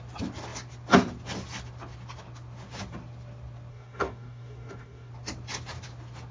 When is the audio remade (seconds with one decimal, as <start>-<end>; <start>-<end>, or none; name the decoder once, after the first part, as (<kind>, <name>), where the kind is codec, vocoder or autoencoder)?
3.7-5.1 (codec, DAC)